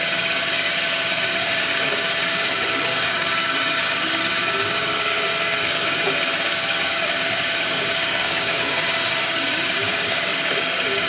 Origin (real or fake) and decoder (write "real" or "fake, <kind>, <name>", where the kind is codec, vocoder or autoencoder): fake, codec, DAC